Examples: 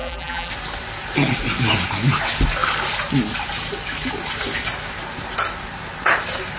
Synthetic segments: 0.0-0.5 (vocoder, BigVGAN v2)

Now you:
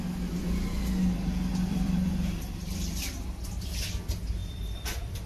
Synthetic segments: 1.5-3.0 (vocoder, BigVGAN v2); 4.4-5.3